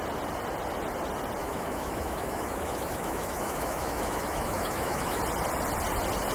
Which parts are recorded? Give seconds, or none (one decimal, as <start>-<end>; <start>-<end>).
0.0-1.4; 5.2-6.3